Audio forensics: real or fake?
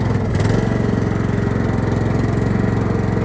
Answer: real